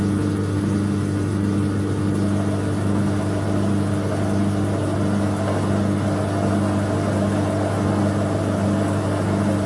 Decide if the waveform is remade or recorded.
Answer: recorded